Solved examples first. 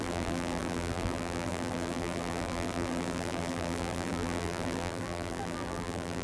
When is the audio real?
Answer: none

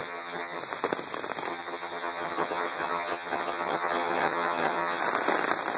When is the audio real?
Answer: 0.6-1.5; 5.0-5.8

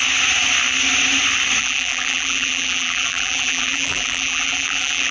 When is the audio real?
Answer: 0.0-1.6

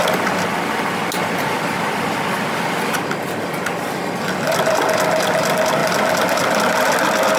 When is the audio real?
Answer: 0.0-7.4

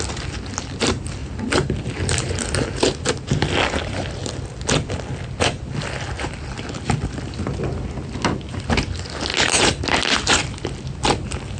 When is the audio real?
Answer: 0.0-1.2; 1.9-11.6

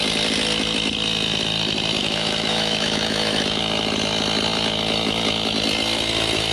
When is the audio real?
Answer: 0.0-2.0; 3.6-6.5